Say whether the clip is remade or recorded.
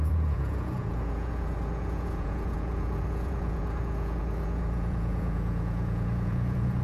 remade